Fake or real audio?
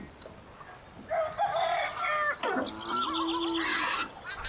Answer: real